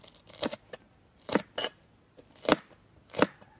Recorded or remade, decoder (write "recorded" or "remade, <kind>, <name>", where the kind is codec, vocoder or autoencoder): recorded